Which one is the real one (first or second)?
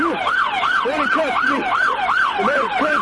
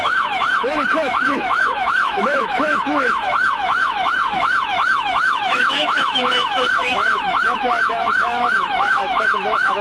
first